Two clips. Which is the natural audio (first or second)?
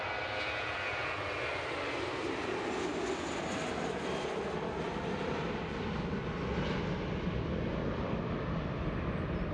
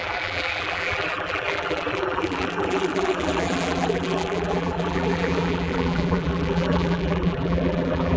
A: first